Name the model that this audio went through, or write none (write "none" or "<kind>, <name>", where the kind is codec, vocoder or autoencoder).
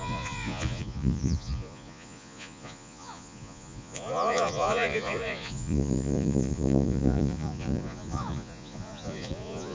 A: vocoder, Vocos